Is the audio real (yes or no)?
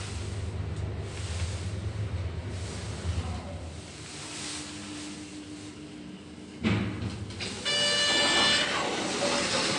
yes